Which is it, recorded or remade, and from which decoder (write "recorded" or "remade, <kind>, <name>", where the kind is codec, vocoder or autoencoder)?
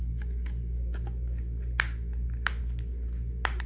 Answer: recorded